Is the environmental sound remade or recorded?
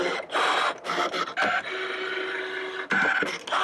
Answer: recorded